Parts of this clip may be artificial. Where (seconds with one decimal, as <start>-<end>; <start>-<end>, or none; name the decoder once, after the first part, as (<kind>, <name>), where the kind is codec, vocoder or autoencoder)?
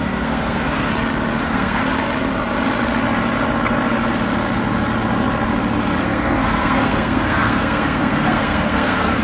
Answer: 0.0-0.9 (codec, SNAC); 1.4-1.8; 6.0-9.2